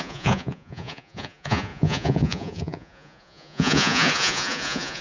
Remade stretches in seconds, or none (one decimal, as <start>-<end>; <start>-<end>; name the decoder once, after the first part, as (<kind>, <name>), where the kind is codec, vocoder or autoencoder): 0.0-5.0 (vocoder, Vocos)